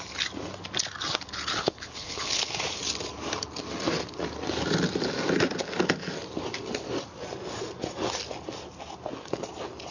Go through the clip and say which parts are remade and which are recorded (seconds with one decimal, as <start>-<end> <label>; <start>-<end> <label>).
0.0-1.6 recorded; 1.6-2.8 remade; 2.8-9.9 recorded

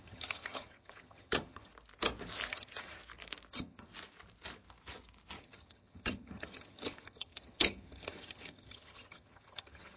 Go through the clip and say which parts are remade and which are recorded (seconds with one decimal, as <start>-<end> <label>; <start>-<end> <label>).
0.0-1.7 remade; 1.7-2.5 recorded; 2.5-3.0 remade; 3.0-3.5 recorded; 3.5-3.9 remade; 3.9-5.4 recorded; 5.4-10.0 remade

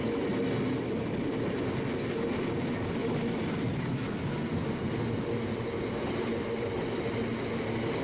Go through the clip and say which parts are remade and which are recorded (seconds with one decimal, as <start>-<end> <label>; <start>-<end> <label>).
0.0-8.0 recorded

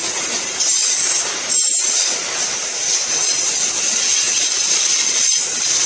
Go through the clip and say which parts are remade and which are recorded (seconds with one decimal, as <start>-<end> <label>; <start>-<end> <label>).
0.0-0.9 remade; 0.9-5.9 recorded

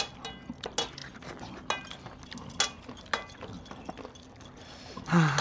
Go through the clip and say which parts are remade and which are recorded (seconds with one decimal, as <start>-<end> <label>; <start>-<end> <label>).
0.0-5.4 recorded